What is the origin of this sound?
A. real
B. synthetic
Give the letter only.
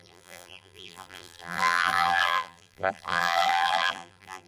B